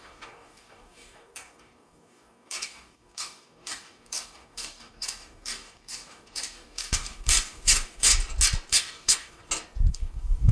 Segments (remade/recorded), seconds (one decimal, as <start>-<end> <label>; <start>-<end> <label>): 0.0-8.1 remade; 8.1-8.7 recorded; 8.7-9.4 remade; 9.4-9.9 recorded; 9.9-10.5 remade